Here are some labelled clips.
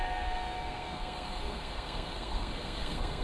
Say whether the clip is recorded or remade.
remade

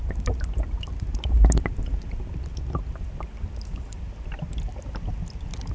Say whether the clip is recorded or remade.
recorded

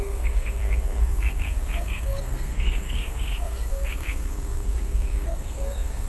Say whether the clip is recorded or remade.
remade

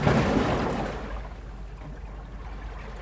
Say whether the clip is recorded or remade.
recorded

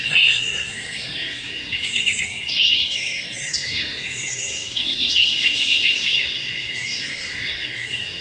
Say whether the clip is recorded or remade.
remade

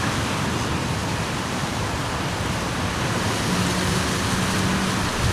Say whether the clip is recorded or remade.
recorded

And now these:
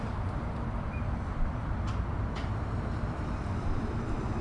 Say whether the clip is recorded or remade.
recorded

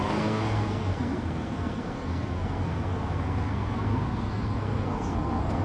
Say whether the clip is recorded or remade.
remade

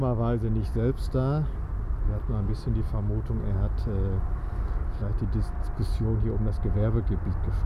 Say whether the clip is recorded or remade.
recorded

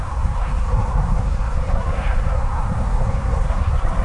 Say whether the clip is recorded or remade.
remade